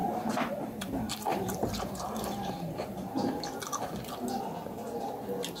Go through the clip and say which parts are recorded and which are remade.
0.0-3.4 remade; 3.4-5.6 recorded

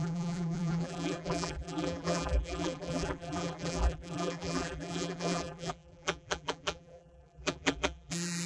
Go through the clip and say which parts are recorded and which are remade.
0.0-8.5 remade

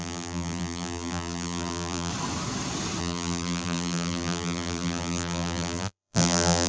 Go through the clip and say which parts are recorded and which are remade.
0.0-2.1 remade; 2.1-3.0 recorded; 3.0-6.7 remade